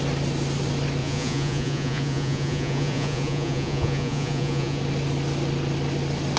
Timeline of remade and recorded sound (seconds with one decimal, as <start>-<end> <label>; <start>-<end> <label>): 0.0-1.0 recorded; 1.0-4.8 remade; 4.8-6.4 recorded